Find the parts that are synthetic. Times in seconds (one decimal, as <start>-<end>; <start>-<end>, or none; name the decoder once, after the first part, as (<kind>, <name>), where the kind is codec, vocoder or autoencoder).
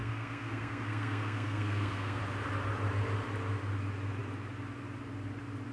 0.0-2.2 (codec, SNAC)